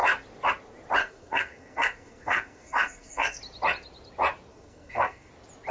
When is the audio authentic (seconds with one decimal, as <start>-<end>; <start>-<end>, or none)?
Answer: 0.0-1.0; 3.4-4.5; 5.3-5.7